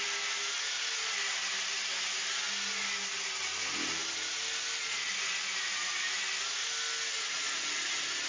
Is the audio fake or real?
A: real